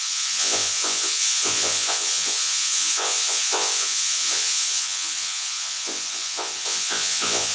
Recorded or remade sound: remade